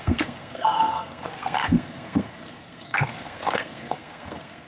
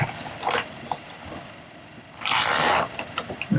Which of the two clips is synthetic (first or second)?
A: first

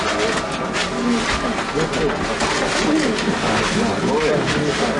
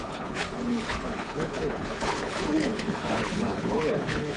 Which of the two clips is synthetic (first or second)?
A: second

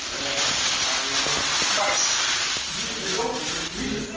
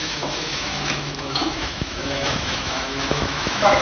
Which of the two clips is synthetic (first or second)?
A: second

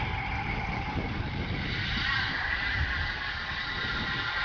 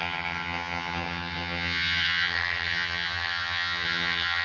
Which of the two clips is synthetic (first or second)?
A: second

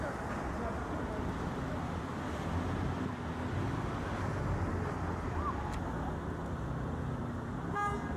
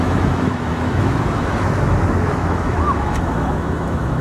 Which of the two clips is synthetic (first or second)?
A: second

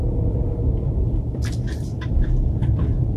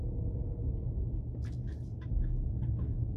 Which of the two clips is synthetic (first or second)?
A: first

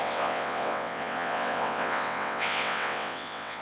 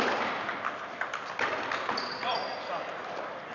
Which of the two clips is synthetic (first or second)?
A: first